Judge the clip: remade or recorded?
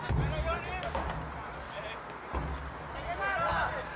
recorded